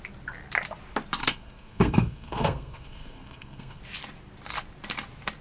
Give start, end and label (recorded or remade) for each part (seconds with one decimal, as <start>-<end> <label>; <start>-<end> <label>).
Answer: 0.0-1.2 recorded; 1.2-3.8 remade; 3.8-5.4 recorded